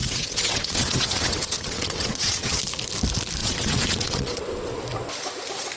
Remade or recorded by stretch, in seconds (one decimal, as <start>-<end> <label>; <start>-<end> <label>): 0.0-2.6 remade; 2.6-3.4 recorded; 3.4-4.4 remade; 4.4-5.8 recorded